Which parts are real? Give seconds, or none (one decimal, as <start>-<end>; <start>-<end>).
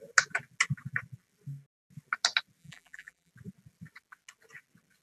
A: 0.0-2.6; 3.3-5.0